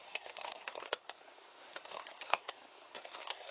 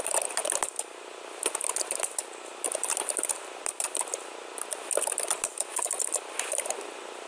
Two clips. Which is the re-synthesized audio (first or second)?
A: first